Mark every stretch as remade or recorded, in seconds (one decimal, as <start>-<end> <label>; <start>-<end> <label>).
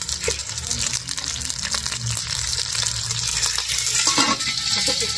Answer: 0.0-0.4 recorded; 0.4-1.0 remade; 1.0-2.2 recorded; 2.2-2.8 remade; 2.8-5.2 recorded